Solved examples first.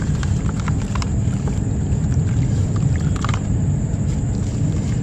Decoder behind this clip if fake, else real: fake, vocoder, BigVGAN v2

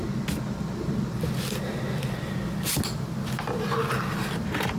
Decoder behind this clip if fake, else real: real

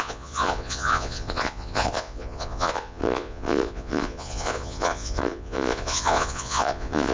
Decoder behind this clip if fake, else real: fake, vocoder, Vocos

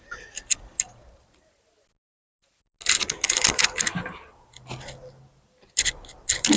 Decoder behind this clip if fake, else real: real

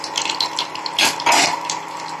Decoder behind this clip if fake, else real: real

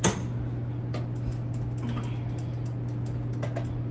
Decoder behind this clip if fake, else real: real